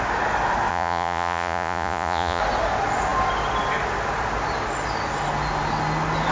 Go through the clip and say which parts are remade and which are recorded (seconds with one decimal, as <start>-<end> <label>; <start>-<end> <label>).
0.0-0.7 recorded; 0.7-2.4 remade; 2.4-6.3 recorded